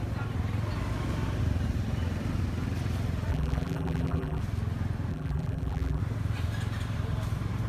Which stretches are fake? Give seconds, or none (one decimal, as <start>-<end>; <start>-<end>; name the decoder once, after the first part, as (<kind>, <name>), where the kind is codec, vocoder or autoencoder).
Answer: 3.3-4.4 (vocoder, BigVGAN v2); 5.1-6.0